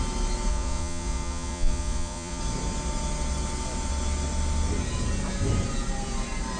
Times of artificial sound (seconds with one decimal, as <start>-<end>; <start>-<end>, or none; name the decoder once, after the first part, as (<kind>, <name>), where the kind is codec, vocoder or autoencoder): 0.5-2.4 (vocoder, Vocos)